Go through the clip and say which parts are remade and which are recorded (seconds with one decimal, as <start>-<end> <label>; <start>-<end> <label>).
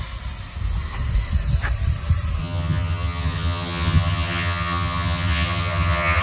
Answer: 0.0-2.4 recorded; 2.4-6.2 remade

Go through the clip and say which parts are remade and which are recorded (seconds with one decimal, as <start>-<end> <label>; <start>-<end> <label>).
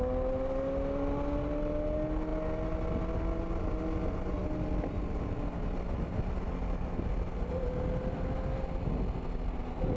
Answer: 0.0-10.0 recorded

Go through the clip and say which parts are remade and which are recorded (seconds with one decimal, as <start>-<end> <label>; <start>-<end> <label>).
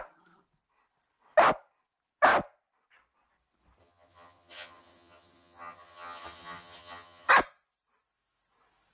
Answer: 0.0-3.8 recorded; 3.8-7.3 remade; 7.3-8.9 recorded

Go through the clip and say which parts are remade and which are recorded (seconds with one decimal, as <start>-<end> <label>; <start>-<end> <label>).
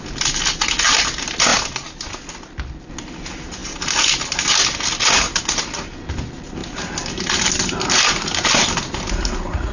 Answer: 0.0-9.7 recorded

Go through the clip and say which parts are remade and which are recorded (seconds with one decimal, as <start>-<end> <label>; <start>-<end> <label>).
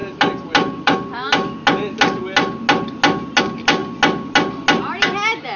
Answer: 0.0-5.6 recorded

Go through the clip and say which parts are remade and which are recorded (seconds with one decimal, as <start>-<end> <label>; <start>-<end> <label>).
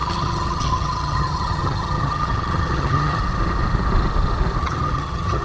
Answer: 0.0-3.2 remade; 3.2-4.6 recorded; 4.6-5.4 remade